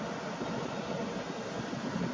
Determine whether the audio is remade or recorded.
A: recorded